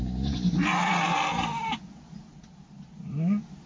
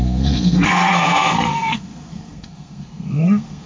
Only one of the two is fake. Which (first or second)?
second